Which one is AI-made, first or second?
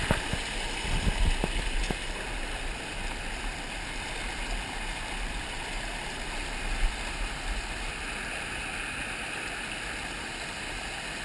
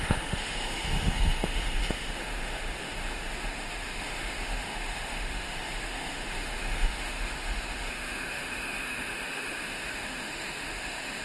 second